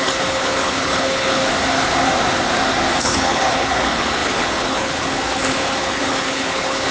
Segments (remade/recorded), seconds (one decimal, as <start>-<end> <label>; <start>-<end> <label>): 0.0-1.4 remade; 1.4-3.0 recorded; 3.0-6.9 remade

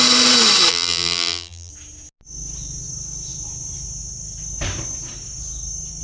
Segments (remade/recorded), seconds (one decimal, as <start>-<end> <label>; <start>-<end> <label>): 0.0-0.7 recorded; 0.7-1.7 remade; 1.7-6.0 recorded

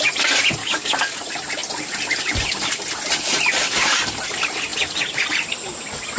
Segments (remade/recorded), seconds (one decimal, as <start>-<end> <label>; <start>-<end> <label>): 0.0-0.6 recorded; 0.6-1.2 remade; 1.2-6.2 recorded

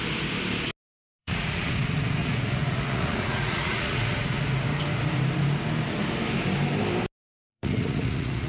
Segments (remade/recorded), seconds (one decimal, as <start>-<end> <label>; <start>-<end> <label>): 0.0-1.2 recorded; 1.2-1.7 remade; 1.7-2.2 recorded; 2.2-4.4 remade; 4.4-7.5 recorded; 7.5-8.5 remade

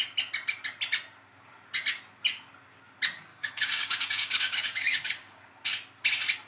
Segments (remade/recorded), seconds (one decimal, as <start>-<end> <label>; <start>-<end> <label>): 0.0-3.3 recorded; 3.3-5.5 remade; 5.5-6.5 recorded

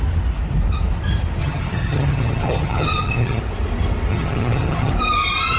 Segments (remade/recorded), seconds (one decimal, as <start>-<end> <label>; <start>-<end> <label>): 0.0-1.4 recorded; 1.4-3.4 remade; 3.4-4.1 recorded; 4.1-4.9 remade; 4.9-5.6 recorded